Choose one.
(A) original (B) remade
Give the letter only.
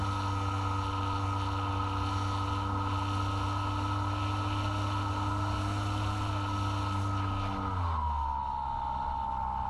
A